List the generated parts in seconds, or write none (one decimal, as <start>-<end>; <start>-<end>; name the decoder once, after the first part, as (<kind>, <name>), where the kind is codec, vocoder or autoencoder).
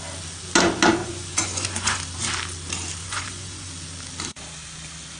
1.0-2.0 (vocoder, Vocos); 3.0-3.7